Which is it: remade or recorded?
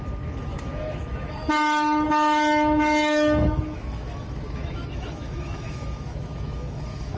remade